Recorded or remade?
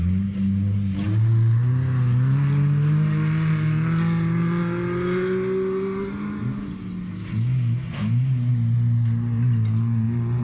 recorded